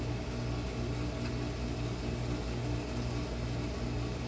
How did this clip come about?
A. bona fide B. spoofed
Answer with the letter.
A